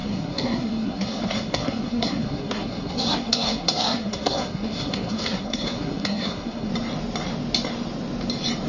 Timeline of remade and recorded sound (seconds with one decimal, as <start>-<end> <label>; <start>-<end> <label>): 0.0-6.7 remade; 6.7-8.7 recorded